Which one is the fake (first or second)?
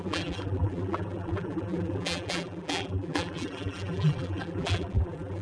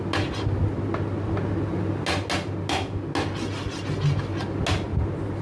first